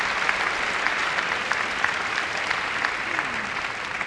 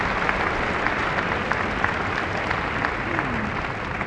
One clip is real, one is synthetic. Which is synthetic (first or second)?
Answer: first